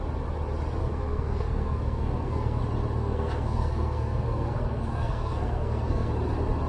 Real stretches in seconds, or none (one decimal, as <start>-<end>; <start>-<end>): 0.0-0.8; 2.6-3.0; 6.1-6.7

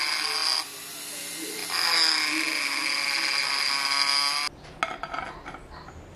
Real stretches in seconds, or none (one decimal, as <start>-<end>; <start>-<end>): 0.0-6.2